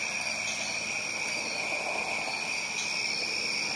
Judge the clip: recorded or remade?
recorded